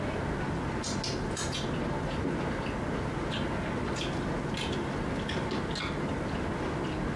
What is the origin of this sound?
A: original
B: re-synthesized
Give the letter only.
A